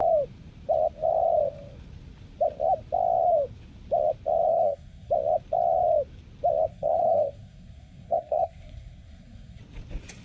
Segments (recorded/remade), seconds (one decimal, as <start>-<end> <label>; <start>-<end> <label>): 0.0-4.5 recorded; 4.5-5.1 remade; 5.1-6.7 recorded; 6.7-9.6 remade; 9.6-10.2 recorded